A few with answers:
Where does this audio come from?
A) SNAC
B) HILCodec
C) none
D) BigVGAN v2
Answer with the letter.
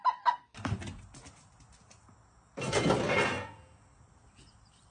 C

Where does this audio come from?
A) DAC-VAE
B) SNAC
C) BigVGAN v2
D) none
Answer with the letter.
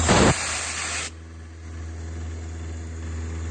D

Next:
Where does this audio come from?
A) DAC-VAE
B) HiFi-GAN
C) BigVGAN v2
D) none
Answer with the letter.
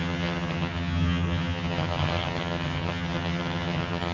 B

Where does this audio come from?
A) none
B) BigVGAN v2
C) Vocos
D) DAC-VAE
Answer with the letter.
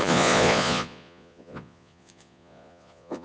C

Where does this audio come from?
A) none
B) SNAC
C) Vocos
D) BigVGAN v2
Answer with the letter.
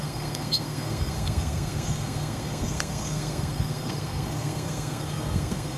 B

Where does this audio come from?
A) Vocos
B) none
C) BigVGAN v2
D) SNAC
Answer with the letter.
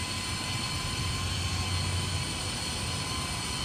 B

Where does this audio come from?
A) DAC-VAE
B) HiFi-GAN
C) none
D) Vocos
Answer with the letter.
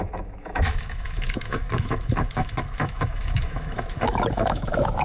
A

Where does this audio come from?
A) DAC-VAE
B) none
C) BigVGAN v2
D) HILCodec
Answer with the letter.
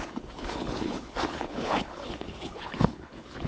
D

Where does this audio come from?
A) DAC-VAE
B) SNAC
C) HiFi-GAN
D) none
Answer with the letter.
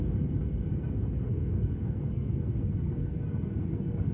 B